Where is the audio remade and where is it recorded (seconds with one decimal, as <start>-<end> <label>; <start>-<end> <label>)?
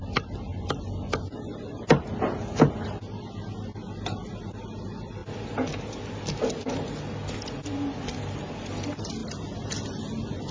0.0-10.5 recorded